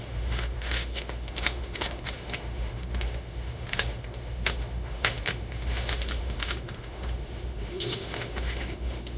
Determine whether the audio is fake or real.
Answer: fake